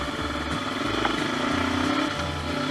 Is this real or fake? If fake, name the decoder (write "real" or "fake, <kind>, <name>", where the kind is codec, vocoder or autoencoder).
real